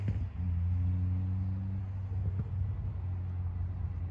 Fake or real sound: real